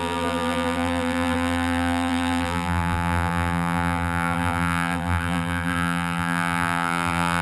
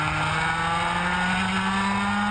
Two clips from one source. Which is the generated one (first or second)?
first